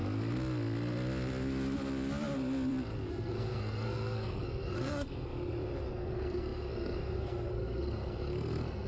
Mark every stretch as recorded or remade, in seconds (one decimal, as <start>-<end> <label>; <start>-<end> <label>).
0.0-3.1 recorded; 3.1-5.3 remade; 5.3-5.9 recorded; 5.9-8.9 remade